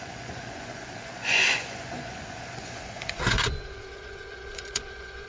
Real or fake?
fake